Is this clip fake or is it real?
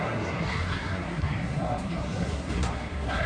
fake